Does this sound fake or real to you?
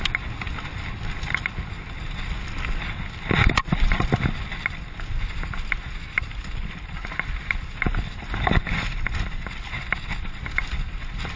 real